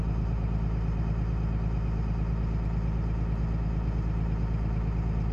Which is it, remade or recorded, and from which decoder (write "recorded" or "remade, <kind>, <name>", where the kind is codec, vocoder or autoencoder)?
recorded